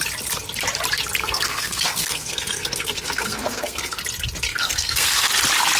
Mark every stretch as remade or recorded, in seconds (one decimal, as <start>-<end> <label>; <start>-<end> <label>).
0.0-1.2 recorded; 1.2-4.0 remade; 4.0-4.5 recorded; 4.5-5.3 remade; 5.3-5.8 recorded